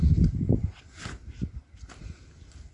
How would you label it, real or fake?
real